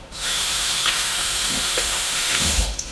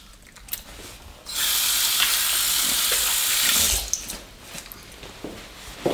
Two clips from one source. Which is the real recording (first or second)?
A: second